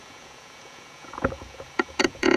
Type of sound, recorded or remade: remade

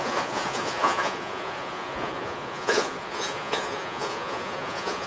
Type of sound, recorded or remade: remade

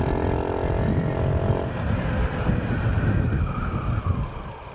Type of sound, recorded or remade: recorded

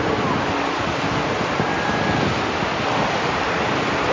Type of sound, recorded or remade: recorded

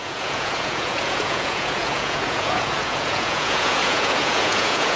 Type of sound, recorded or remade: remade